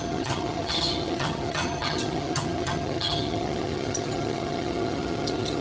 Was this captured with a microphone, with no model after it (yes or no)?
no